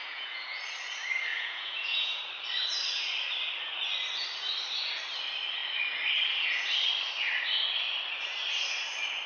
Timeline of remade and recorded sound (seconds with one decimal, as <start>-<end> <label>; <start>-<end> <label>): 0.0-0.6 remade; 0.6-1.3 recorded; 1.3-2.2 remade; 2.2-9.3 recorded

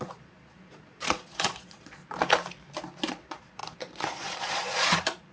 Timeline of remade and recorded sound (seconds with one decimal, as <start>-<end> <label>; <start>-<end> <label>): 0.0-2.0 remade; 2.0-3.1 recorded; 3.1-5.3 remade

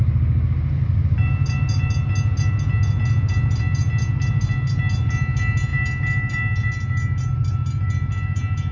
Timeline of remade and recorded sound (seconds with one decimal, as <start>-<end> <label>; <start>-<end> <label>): 0.0-8.7 recorded

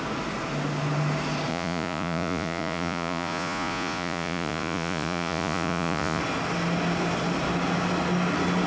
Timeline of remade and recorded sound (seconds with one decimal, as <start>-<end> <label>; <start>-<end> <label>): 0.0-1.5 recorded; 1.5-6.2 remade; 6.2-8.7 recorded

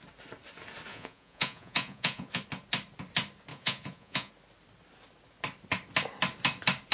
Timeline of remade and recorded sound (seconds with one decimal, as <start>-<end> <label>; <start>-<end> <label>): 0.0-0.9 recorded; 0.9-2.4 remade; 2.4-3.5 recorded; 3.5-4.3 remade; 4.3-6.9 recorded

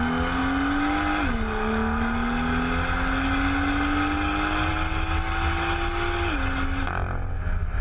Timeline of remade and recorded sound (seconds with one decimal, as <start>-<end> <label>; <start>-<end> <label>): 0.0-7.8 recorded